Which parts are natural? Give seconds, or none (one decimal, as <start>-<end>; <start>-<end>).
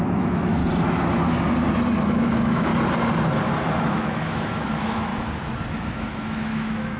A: 0.6-2.1; 2.7-3.9; 5.1-5.7